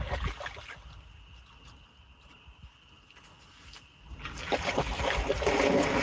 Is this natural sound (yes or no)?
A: yes